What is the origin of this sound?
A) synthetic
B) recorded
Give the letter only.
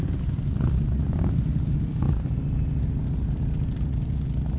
B